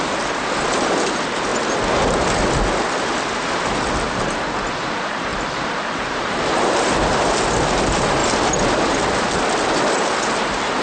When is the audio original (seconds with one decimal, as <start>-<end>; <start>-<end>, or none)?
0.0-5.3; 6.9-10.8